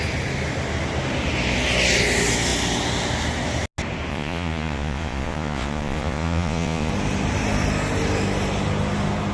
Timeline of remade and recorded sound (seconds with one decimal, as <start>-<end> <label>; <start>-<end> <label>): 0.0-4.1 recorded; 4.1-6.9 remade; 6.9-9.3 recorded